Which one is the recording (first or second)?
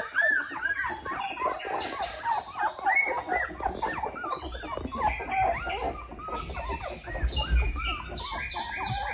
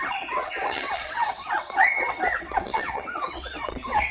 first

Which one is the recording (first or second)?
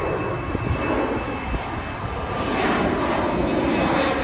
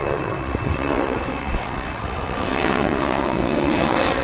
first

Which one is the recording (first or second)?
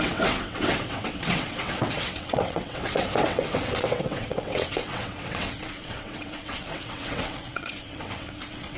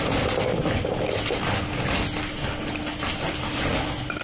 second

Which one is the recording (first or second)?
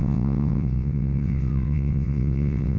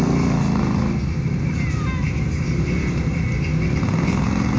second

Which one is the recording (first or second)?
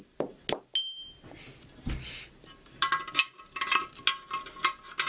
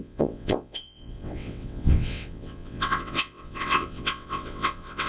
first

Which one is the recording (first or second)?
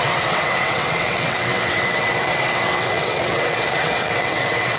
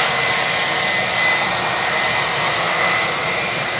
second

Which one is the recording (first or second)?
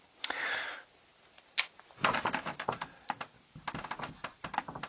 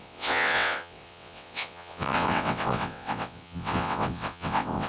first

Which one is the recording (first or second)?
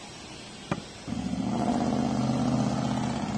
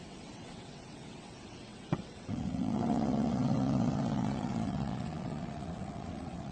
first